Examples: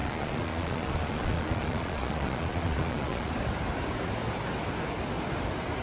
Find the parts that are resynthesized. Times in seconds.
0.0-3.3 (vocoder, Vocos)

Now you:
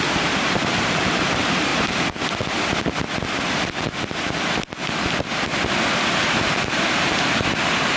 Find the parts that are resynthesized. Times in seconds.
0.0-1.7 (vocoder, BigVGAN v2); 6.0-8.0

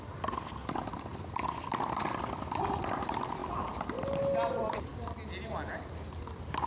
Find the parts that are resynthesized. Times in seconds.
none

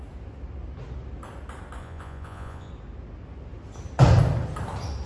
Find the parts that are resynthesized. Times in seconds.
1.8-2.7 (vocoder, Vocos)

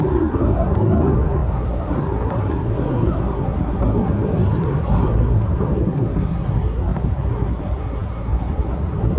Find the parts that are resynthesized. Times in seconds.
0.0-9.2 (codec, SNAC)